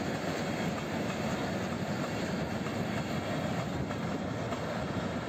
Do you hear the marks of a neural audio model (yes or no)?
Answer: no